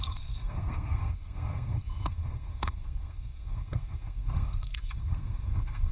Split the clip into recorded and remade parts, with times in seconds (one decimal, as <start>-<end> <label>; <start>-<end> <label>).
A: 0.0-5.9 remade